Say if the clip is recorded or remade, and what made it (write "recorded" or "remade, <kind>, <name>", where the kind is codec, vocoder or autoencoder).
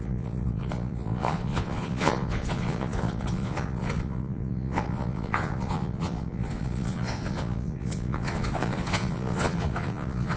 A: remade, vocoder, Vocos